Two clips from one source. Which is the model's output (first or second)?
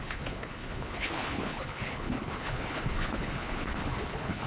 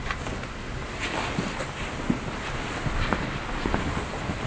first